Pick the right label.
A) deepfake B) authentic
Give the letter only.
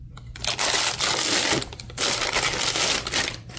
A